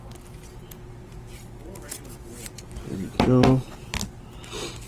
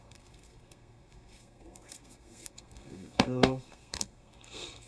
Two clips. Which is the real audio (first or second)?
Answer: first